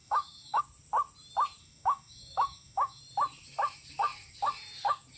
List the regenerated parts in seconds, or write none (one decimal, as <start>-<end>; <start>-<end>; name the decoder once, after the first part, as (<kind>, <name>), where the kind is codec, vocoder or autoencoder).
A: 0.0-0.6 (autoencoder, DAC-VAE); 1.6-3.0